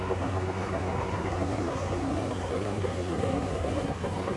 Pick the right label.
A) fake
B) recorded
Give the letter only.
A